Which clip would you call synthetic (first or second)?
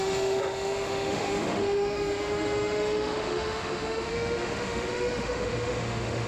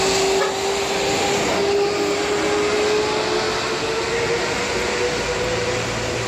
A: first